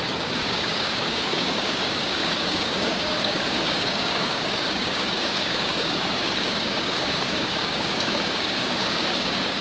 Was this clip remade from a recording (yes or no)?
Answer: yes